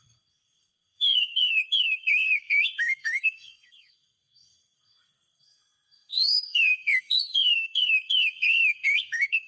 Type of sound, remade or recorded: remade